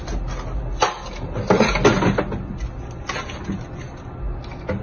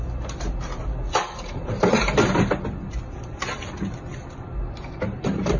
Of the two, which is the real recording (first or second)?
first